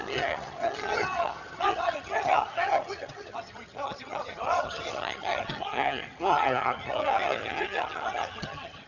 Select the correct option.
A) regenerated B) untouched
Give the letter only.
A